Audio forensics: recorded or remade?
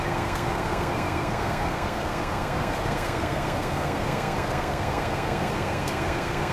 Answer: remade